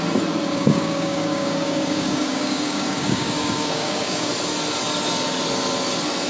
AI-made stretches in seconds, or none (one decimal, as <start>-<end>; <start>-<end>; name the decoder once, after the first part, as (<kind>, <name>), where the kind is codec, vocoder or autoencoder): 0.5-4.3 (codec, DAC)